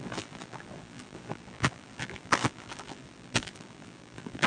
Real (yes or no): no